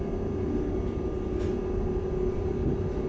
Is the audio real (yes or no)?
yes